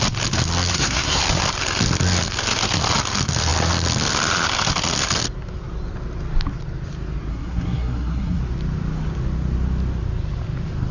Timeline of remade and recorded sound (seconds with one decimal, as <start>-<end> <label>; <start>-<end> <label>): 0.0-0.7 recorded; 0.7-1.2 remade; 1.2-7.3 recorded; 7.3-8.4 remade; 8.4-10.9 recorded